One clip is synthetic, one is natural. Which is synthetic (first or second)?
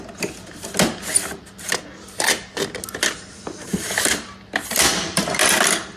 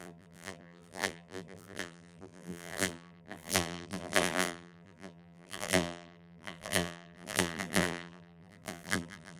second